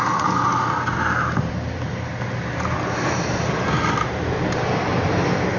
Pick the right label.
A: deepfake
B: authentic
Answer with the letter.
B